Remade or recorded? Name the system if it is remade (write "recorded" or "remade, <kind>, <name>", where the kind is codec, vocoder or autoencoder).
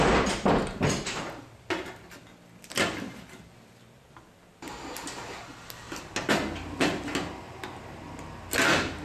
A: recorded